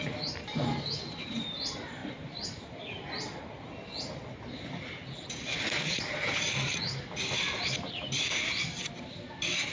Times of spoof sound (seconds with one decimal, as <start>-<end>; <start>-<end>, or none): none